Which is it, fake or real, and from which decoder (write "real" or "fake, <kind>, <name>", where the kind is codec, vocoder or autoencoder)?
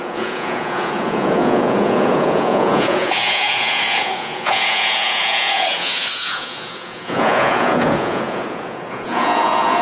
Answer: fake, vocoder, Vocos